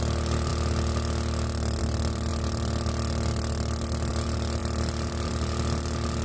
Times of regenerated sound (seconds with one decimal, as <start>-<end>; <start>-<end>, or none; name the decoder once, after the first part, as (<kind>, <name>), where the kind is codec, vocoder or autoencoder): 4.6-5.3 (vocoder, BigVGAN v2)

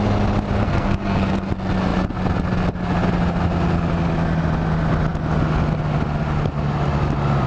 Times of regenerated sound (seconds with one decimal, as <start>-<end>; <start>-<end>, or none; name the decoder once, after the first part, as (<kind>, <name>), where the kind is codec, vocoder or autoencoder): 0.6-1.5 (codec, SNAC)